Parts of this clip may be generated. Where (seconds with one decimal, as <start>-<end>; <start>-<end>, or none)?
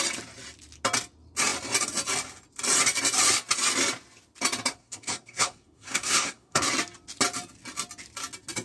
4.8-6.7